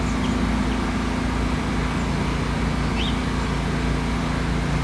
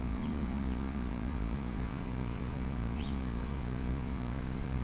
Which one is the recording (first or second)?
first